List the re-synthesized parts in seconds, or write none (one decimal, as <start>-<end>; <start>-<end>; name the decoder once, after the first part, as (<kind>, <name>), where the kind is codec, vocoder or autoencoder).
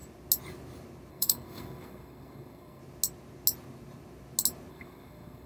1.1-2.8 (codec, SNAC); 4.7-5.5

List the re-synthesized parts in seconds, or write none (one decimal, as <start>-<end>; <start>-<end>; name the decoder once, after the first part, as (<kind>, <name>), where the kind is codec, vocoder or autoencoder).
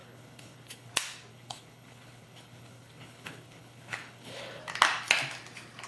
0.0-0.9 (codec, HILCodec); 1.3-4.6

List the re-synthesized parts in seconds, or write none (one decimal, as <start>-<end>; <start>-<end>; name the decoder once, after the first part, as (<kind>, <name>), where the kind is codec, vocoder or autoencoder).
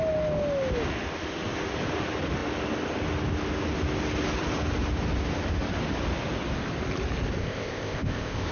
7.4-8.5 (codec, ZipCodec)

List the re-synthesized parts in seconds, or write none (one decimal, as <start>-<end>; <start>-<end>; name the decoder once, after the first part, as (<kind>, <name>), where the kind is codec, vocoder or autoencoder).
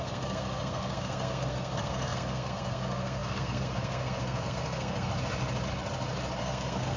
0.0-5.1 (codec, SNAC); 6.4-7.0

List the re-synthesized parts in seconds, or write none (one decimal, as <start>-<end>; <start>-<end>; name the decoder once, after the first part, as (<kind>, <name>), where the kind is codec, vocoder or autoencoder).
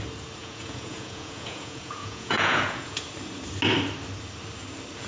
0.4-3.0 (vocoder, Vocos)